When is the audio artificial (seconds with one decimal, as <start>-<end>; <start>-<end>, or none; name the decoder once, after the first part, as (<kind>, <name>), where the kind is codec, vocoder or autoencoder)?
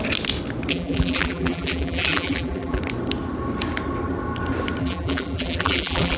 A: 0.7-2.8 (vocoder, BigVGAN v2); 4.8-6.2